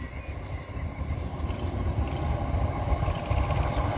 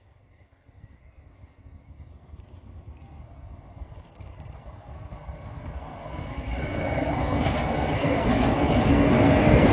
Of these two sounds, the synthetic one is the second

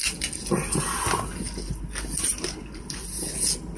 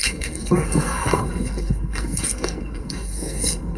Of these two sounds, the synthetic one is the second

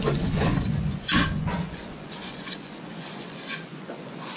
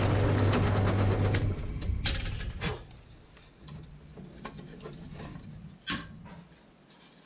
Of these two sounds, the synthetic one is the first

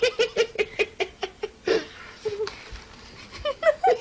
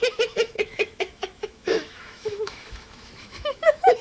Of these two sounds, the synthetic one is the second